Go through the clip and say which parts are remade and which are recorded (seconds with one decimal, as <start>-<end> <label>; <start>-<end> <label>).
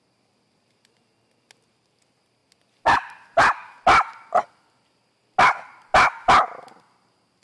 0.0-7.4 recorded